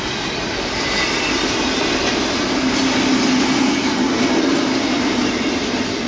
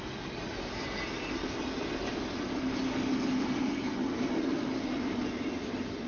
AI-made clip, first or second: first